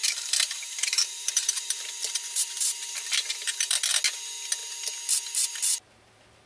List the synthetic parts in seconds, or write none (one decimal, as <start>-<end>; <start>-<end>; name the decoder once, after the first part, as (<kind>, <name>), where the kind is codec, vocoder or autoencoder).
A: 0.0-3.9 (vocoder, BigVGAN v2)